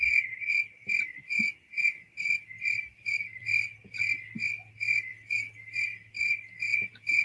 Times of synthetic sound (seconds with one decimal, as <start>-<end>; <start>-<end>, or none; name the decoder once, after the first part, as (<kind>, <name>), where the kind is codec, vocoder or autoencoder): 6.7-7.2 (vocoder, Vocos)